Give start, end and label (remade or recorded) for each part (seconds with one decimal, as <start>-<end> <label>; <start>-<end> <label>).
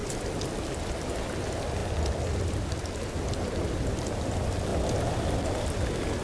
0.0-6.2 recorded